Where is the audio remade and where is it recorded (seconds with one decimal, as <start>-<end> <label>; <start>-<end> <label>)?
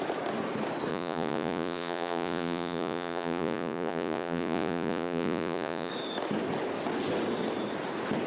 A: 0.0-0.9 recorded; 0.9-5.9 remade; 5.9-8.3 recorded